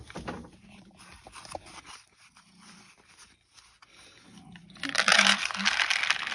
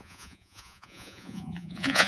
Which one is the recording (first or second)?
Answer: first